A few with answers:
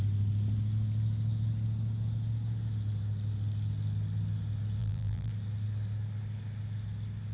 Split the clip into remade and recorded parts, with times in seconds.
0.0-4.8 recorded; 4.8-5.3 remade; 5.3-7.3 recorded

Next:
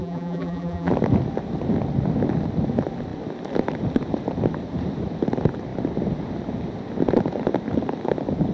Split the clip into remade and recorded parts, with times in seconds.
0.0-0.9 remade; 0.9-8.5 recorded

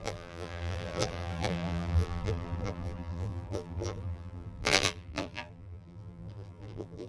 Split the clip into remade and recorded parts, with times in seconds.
0.0-7.1 remade

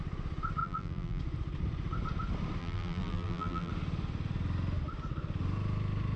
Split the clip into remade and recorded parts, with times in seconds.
0.0-0.6 recorded; 0.6-1.2 remade; 1.2-2.6 recorded; 2.6-3.7 remade; 3.7-6.2 recorded

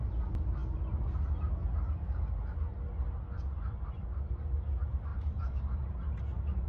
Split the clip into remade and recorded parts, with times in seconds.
0.0-5.1 recorded; 5.1-5.6 remade; 5.6-6.7 recorded

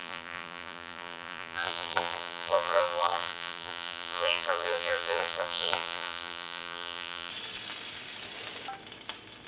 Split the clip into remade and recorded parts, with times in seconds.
0.0-7.3 remade; 7.3-9.5 recorded

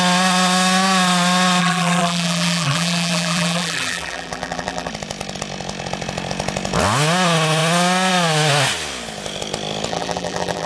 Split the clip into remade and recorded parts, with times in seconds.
0.0-1.6 recorded; 1.6-4.9 remade; 4.9-9.9 recorded; 9.9-10.7 remade